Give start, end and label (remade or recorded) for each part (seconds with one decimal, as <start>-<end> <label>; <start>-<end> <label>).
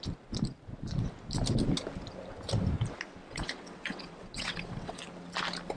0.0-3.2 recorded; 3.2-5.0 remade; 5.0-5.8 recorded